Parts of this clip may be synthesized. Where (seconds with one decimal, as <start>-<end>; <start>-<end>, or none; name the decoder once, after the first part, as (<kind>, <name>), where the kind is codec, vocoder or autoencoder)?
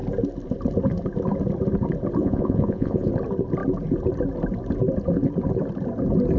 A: 2.2-3.1 (vocoder, Vocos)